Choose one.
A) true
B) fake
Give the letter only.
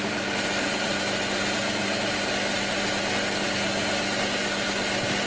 A